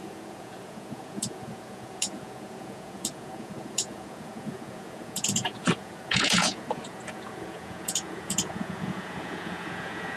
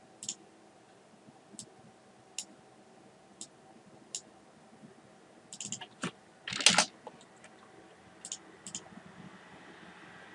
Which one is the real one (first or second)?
second